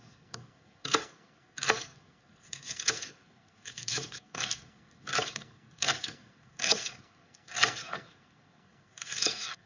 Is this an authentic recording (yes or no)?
no